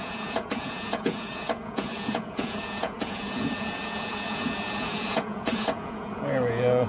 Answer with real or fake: fake